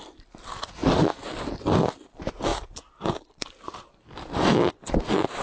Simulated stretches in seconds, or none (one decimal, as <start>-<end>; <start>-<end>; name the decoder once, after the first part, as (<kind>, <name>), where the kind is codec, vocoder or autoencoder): 2.5-5.0 (vocoder, BigVGAN v2)